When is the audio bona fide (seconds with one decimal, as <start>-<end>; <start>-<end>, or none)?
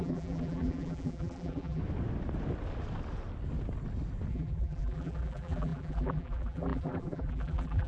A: 1.8-4.3